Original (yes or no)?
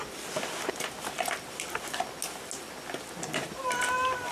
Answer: yes